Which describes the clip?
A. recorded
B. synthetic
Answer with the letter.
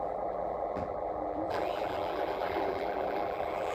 B